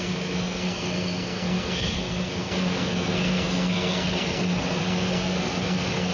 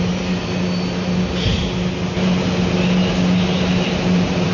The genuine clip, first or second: second